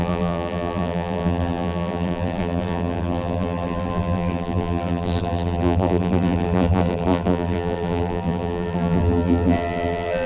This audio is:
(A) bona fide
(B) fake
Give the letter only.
B